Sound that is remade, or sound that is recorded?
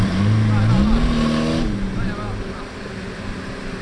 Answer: recorded